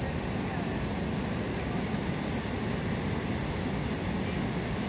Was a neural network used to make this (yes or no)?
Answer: no